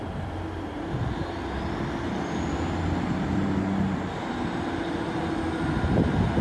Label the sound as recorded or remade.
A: recorded